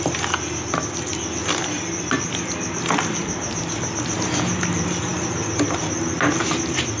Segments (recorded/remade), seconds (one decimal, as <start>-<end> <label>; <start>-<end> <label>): 0.0-7.0 recorded